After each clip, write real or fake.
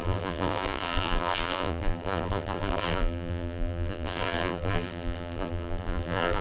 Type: fake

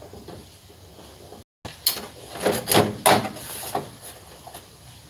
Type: real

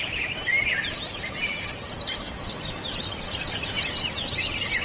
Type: real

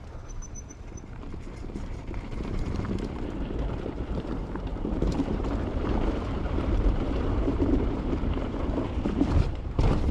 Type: fake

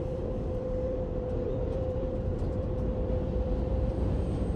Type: fake